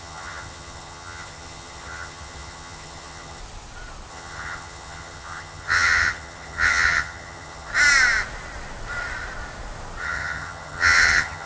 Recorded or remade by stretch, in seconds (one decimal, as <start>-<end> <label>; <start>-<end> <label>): 0.0-3.4 remade; 3.4-4.1 recorded; 4.1-7.7 remade; 7.7-10.0 recorded; 10.0-11.5 remade